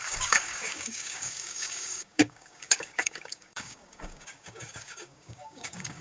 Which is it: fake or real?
fake